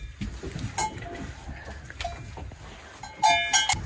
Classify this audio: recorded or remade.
recorded